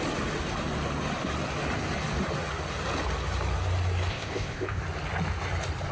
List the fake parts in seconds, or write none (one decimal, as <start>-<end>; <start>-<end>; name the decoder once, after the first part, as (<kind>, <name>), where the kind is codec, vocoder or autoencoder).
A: 4.1-4.8 (codec, ZipCodec)